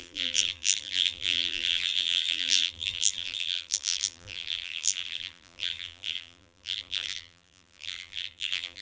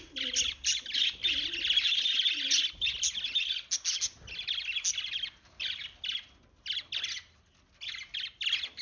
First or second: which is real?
second